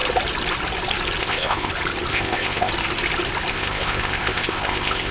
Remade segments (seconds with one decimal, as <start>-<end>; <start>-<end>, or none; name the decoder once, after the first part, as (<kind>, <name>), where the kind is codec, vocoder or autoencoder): 1.2-1.7 (codec, ZipCodec); 2.1-2.7; 3.5-5.1